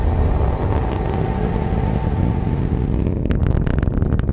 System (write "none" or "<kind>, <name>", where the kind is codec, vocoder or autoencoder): none